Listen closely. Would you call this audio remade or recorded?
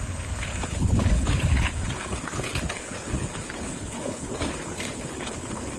remade